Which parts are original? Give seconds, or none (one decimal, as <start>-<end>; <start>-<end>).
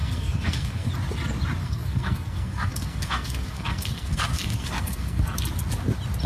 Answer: 0.9-1.6; 5.4-6.3